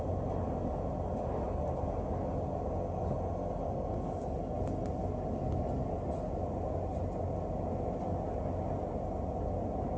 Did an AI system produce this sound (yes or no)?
no